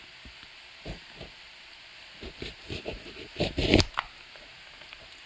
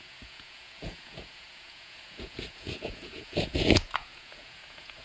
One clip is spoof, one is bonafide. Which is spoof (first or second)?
second